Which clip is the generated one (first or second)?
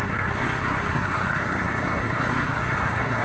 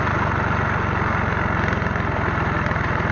first